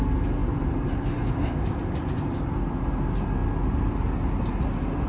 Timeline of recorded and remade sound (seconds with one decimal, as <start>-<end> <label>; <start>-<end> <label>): 0.0-0.4 recorded; 0.4-2.5 remade; 2.5-5.1 recorded